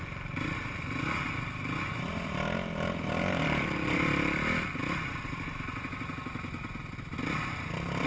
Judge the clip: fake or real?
real